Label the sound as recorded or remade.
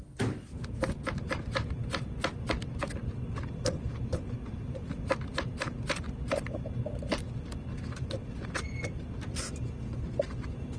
recorded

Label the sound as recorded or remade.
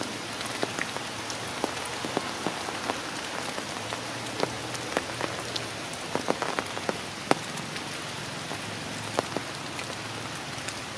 recorded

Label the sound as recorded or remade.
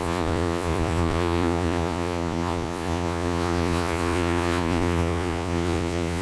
remade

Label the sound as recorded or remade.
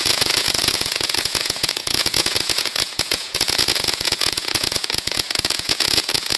remade